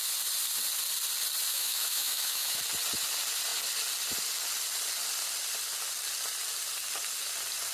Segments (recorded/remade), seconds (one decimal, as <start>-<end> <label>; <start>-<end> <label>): 0.0-1.5 recorded; 1.5-2.6 remade; 2.6-7.7 recorded